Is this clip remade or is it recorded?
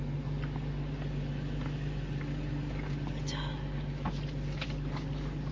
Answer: recorded